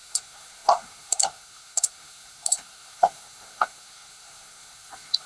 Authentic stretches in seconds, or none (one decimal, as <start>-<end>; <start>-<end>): none